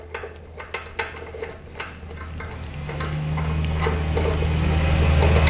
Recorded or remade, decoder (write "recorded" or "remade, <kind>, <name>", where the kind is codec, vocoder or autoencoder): recorded